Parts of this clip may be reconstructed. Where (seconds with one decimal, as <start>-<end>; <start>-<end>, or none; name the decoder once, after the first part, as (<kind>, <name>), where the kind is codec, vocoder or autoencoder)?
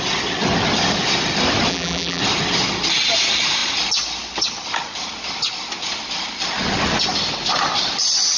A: 1.7-2.2 (vocoder, BigVGAN v2)